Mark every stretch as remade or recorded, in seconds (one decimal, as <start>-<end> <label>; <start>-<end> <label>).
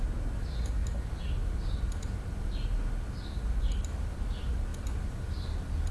0.0-5.9 recorded